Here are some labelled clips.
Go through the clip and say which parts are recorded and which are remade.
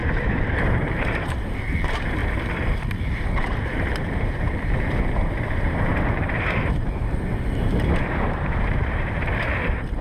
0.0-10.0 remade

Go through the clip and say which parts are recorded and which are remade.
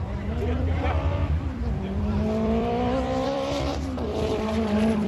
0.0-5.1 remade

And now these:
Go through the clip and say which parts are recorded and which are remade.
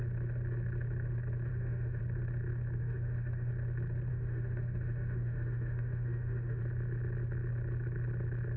0.0-1.5 recorded; 1.5-2.0 remade; 2.0-2.8 recorded; 2.8-3.5 remade; 3.5-4.1 recorded; 4.1-6.6 remade; 6.6-8.6 recorded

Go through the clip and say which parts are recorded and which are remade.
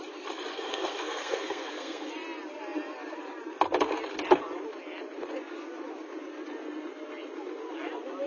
0.0-0.5 recorded; 0.5-2.1 remade; 2.1-8.3 recorded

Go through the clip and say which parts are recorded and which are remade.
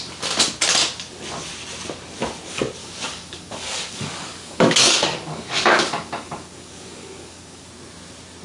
0.0-2.8 recorded; 2.8-7.7 remade; 7.7-8.4 recorded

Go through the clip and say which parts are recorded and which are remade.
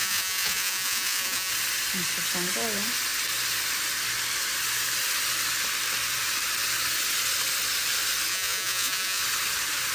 0.0-1.5 remade; 1.5-8.3 recorded; 8.3-9.2 remade; 9.2-9.9 recorded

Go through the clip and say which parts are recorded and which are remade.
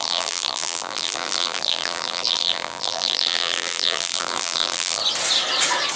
0.0-5.0 remade; 5.0-6.0 recorded